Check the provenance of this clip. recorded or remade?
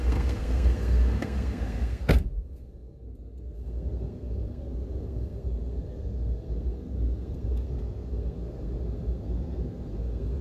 remade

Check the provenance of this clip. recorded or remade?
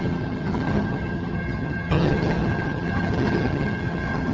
remade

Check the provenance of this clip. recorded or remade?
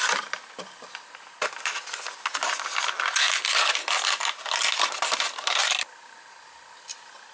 recorded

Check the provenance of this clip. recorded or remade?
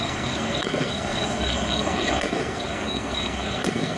remade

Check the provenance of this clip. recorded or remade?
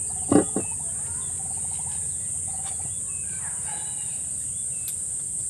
recorded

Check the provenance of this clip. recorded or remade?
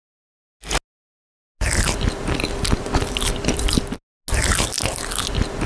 recorded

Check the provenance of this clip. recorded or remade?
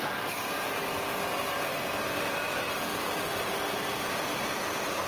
remade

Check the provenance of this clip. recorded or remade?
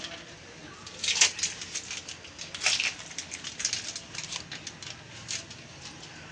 recorded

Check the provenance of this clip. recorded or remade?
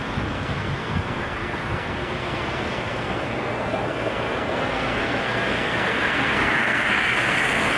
remade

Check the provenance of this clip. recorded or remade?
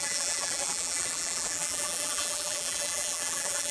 remade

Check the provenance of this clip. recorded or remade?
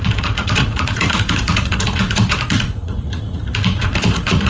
remade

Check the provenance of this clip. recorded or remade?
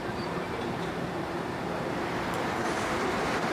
remade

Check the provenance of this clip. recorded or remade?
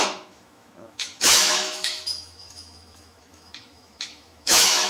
remade